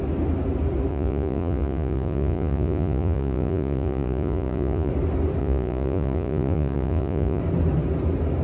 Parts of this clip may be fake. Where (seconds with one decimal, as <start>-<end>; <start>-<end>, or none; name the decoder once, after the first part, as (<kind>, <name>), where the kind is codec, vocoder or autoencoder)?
0.9-4.9 (vocoder, Vocos); 5.4-7.4